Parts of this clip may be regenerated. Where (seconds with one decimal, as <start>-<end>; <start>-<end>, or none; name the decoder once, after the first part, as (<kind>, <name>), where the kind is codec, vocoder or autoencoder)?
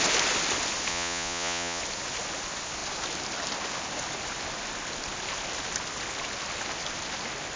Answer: 0.9-1.8 (vocoder, Vocos)